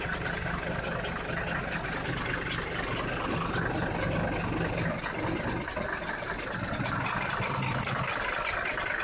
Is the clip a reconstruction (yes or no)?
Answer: no